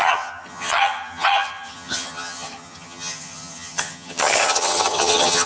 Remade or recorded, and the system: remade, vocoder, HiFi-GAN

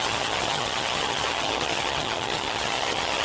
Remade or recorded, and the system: remade, vocoder, HiFi-GAN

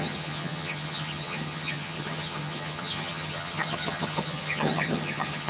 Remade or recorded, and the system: remade, vocoder, HiFi-GAN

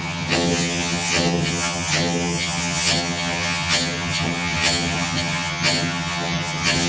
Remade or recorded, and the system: remade, vocoder, HiFi-GAN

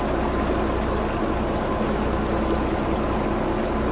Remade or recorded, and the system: recorded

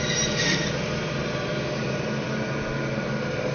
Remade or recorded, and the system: recorded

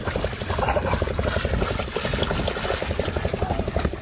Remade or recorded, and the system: recorded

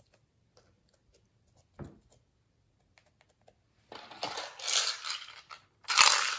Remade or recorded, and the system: recorded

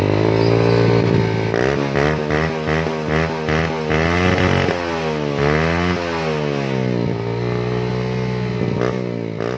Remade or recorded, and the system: recorded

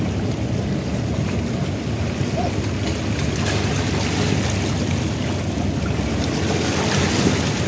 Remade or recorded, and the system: recorded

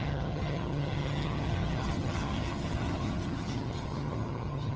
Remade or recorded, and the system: remade, vocoder, HiFi-GAN